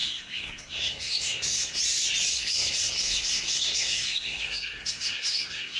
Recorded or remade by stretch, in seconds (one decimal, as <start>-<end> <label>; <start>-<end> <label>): 0.0-1.8 remade; 1.8-2.3 recorded; 2.3-5.8 remade